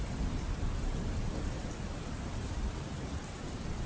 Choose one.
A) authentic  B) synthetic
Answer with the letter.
A